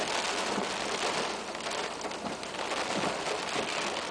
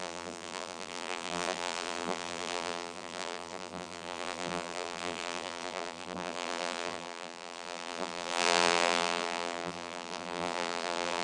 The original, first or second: first